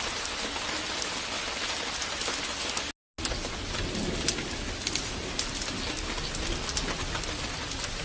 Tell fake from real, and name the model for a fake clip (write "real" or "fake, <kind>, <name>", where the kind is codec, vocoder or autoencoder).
real